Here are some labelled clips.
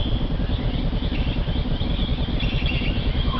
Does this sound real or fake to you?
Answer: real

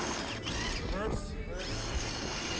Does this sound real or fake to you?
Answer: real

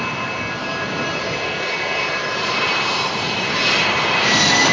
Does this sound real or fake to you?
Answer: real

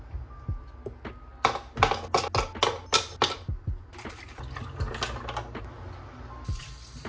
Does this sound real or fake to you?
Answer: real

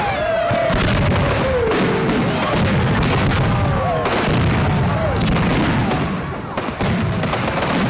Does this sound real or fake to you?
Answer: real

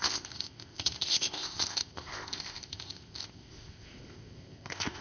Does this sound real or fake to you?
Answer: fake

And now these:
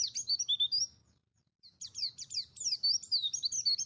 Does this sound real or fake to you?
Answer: real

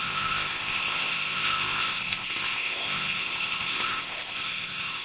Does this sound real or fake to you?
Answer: fake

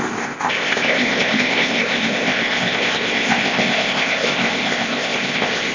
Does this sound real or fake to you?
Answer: fake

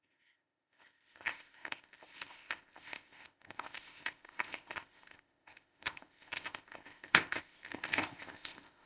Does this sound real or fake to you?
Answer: fake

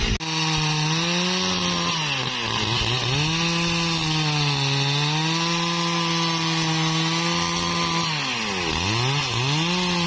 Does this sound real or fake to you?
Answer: real